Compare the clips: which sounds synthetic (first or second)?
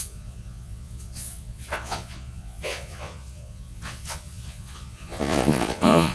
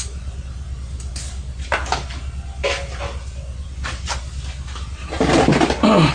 first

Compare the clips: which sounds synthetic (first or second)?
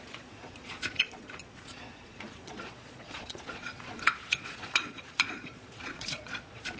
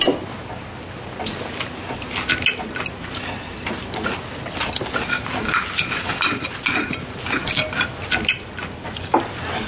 first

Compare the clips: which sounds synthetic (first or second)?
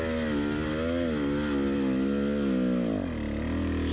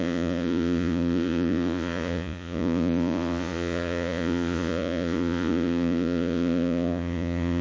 second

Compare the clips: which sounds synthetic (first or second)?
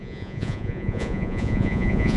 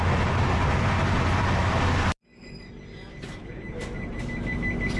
first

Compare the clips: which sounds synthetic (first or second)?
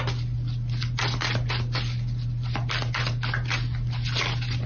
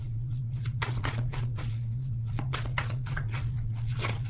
second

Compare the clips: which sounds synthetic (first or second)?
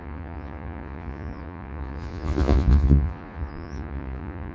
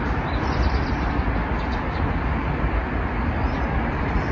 first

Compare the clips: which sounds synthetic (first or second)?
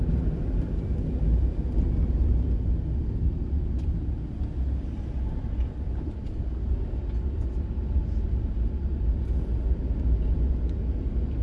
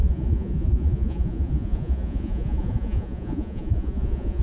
second